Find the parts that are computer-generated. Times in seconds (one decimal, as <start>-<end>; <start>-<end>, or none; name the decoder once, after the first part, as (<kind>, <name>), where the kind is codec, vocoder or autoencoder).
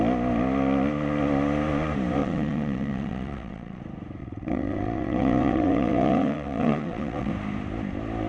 2.2-3.8 (vocoder, WaveNeXt); 4.2-7.3